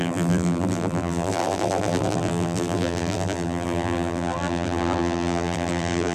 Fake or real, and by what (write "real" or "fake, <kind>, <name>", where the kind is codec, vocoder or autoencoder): fake, vocoder, BigVGAN v2